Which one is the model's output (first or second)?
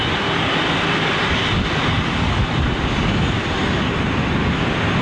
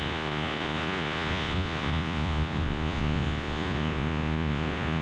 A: second